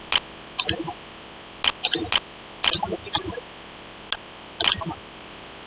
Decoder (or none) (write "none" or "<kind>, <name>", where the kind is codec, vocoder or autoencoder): none